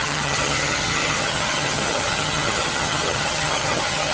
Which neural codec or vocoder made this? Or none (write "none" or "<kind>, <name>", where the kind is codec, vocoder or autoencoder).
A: vocoder, HiFi-GAN